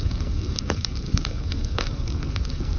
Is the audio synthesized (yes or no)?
yes